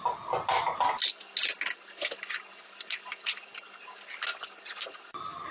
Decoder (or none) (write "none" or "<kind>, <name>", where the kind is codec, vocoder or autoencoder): none